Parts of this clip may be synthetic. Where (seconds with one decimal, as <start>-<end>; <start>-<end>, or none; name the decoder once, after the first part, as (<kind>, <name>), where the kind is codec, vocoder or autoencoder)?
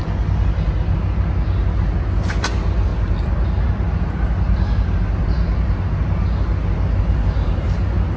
none